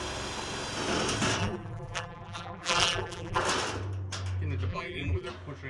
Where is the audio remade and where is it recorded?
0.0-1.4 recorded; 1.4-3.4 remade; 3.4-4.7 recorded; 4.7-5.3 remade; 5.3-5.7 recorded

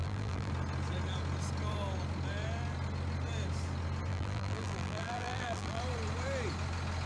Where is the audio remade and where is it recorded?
0.0-0.5 remade; 0.5-4.1 recorded; 4.1-5.8 remade; 5.8-7.1 recorded

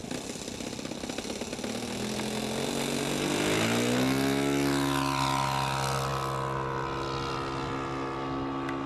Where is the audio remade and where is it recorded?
0.0-1.6 remade; 1.6-8.9 recorded

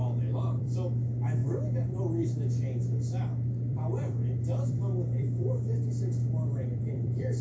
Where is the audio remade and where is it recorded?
0.0-7.4 remade

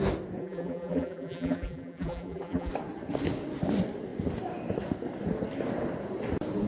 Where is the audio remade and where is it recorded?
0.0-0.4 recorded; 0.4-2.7 remade; 2.7-6.7 recorded